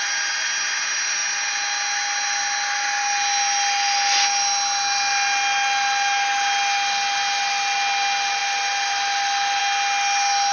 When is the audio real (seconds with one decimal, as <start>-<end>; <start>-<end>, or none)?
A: 0.0-10.5